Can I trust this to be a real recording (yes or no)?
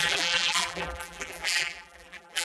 no